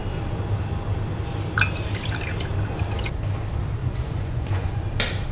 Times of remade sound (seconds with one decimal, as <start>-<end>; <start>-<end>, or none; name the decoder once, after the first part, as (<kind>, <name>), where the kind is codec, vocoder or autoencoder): 3.8-4.8 (vocoder, Vocos)